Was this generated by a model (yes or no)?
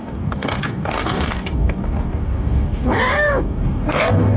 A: yes